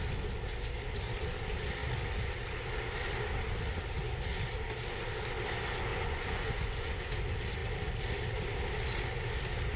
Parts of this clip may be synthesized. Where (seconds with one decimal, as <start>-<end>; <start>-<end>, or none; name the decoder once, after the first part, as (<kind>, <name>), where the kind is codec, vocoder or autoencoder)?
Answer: 5.9-7.1 (vocoder, Vocos)